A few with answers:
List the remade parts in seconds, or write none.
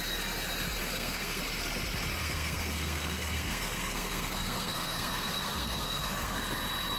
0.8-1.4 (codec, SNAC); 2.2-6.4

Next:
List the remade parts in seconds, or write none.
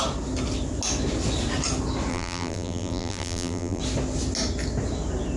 2.1-3.8 (vocoder, BigVGAN v2)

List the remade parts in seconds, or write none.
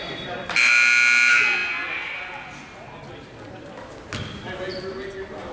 none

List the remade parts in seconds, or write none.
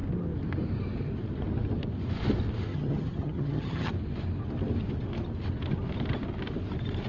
2.7-3.9 (vocoder, HiFi-GAN)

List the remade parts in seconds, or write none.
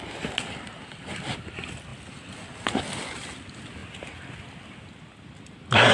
none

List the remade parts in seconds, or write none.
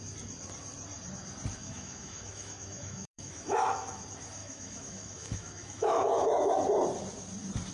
1.6-4.0 (autoencoder, DAC-VAE); 4.4-6.6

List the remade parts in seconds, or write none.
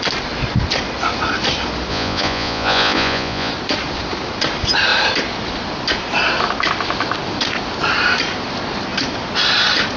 1.9-3.5 (vocoder, Vocos)